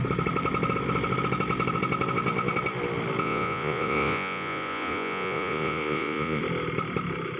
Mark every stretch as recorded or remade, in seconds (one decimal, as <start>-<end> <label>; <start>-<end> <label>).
0.0-3.2 recorded; 3.2-6.4 remade; 6.4-7.4 recorded